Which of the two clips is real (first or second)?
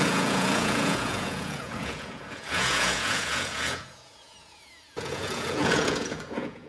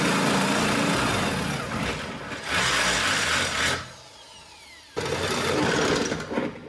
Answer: second